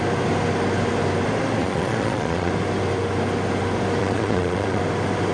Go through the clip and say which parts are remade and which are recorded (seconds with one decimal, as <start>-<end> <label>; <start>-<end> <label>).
0.0-1.6 recorded; 1.6-2.5 remade; 2.5-4.0 recorded; 4.0-4.8 remade; 4.8-5.3 recorded